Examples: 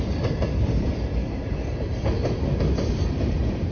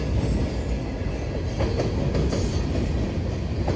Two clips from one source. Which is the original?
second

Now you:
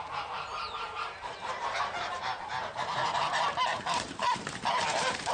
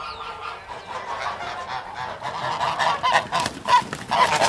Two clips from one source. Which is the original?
second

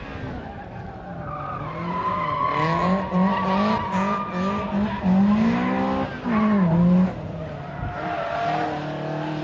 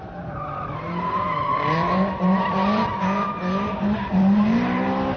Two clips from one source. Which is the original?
first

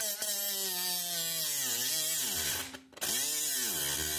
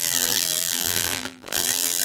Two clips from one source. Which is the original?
first